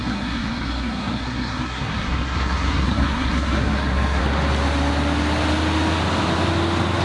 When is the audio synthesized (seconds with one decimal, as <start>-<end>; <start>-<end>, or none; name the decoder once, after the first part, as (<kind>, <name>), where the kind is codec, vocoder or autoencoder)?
0.0-4.2 (codec, SNAC)